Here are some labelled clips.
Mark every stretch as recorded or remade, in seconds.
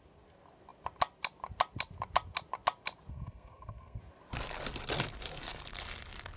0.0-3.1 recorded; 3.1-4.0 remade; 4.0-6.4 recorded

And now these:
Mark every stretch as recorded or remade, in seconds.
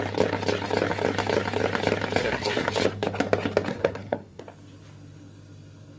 0.0-2.2 recorded; 2.2-2.7 remade; 2.7-3.7 recorded; 3.7-4.4 remade; 4.4-6.0 recorded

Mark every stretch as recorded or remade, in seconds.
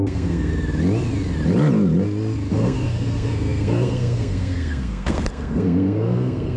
0.0-0.5 remade; 0.5-2.5 recorded; 2.5-6.6 remade